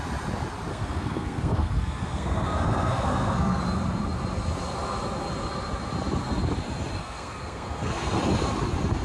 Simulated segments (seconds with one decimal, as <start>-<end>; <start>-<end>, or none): 0.7-3.6; 7.0-8.2